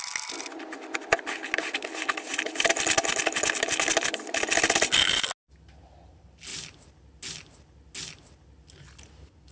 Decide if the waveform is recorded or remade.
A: recorded